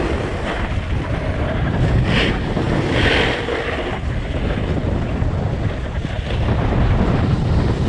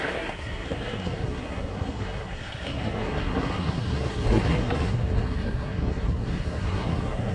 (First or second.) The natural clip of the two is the first